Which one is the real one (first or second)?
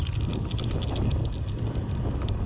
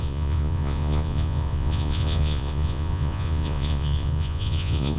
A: first